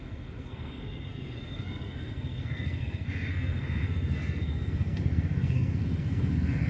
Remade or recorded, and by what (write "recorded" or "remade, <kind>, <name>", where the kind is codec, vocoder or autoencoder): remade, codec, SNAC